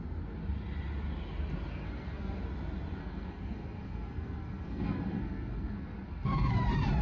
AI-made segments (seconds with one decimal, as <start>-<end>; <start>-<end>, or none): 1.7-2.4; 3.0-6.5

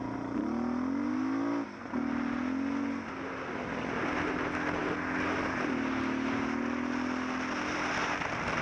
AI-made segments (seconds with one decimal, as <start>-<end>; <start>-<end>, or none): none

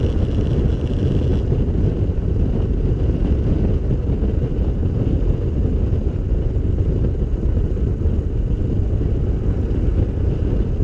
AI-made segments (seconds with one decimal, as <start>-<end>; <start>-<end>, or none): none

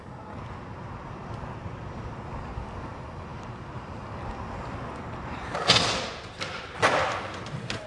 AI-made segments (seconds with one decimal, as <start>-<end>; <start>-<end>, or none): 3.3-4.2